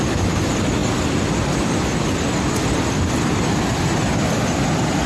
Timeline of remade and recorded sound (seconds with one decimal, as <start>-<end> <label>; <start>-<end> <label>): 0.0-5.1 recorded